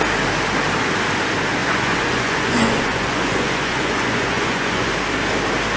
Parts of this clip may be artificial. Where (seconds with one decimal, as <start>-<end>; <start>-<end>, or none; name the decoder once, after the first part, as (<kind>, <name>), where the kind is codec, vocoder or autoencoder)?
1.6-4.9 (vocoder, Vocos)